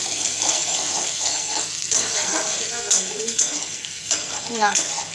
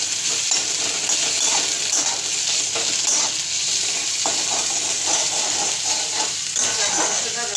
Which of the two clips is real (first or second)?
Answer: second